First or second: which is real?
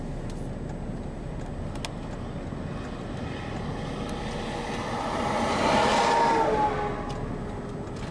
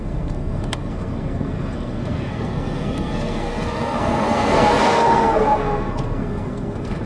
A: first